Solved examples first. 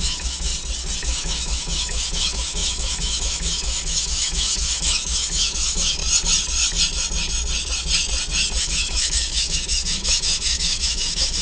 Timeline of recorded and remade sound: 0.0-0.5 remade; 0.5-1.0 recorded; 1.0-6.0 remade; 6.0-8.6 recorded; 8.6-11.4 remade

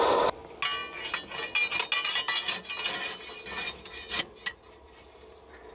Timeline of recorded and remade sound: 0.0-5.7 recorded

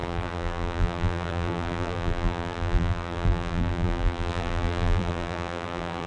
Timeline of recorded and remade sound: 0.0-6.1 remade

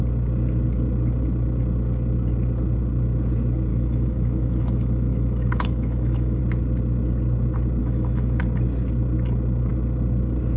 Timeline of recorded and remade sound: 0.0-3.7 recorded; 3.7-6.4 remade; 6.4-7.8 recorded; 7.8-8.4 remade; 8.4-10.6 recorded